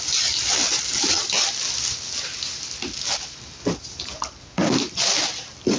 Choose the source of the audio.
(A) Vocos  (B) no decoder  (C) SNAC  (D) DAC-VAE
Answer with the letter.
B